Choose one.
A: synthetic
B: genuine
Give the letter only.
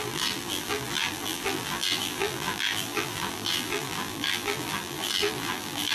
A